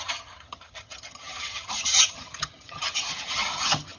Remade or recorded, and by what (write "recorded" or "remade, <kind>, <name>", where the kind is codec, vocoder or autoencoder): remade, vocoder, HiFi-GAN